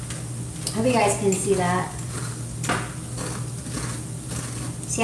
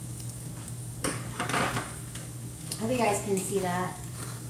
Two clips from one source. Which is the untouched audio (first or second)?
first